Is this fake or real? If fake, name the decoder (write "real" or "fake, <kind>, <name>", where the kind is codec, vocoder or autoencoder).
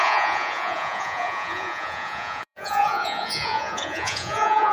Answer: fake, vocoder, Vocos